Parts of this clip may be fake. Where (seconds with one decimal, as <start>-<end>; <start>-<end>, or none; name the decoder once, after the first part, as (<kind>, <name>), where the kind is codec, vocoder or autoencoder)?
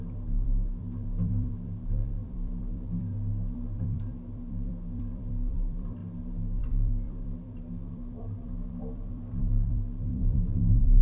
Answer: 0.0-6.0 (vocoder, BigVGAN v2); 6.6-11.0